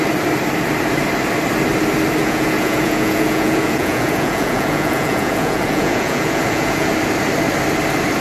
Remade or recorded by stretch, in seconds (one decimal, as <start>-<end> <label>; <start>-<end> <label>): 0.0-2.2 recorded; 2.2-6.9 remade; 6.9-8.2 recorded